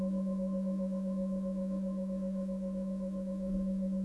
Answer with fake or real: fake